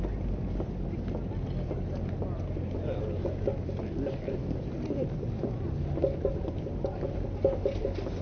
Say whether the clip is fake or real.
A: real